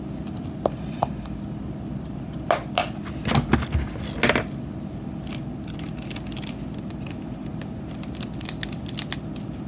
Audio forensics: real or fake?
real